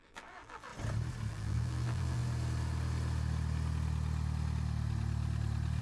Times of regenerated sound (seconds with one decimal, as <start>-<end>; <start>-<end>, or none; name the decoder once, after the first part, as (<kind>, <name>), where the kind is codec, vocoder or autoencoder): 0.0-0.7 (vocoder, BigVGAN v2); 1.3-2.2